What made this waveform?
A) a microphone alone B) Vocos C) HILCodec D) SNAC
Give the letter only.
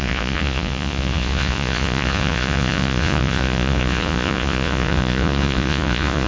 B